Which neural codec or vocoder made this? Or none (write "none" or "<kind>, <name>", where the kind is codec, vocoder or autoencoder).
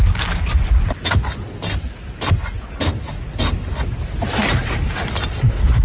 none